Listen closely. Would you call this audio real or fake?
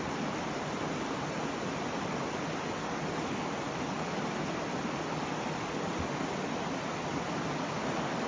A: real